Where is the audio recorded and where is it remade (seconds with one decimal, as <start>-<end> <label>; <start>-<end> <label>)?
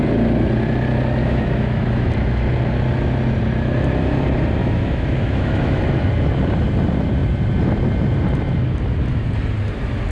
0.0-1.2 recorded; 1.2-2.1 remade; 2.1-4.6 recorded; 4.6-5.8 remade; 5.8-10.1 recorded